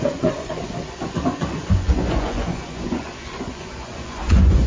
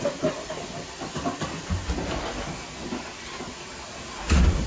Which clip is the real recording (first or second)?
second